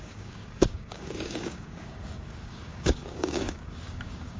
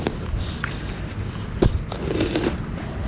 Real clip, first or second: second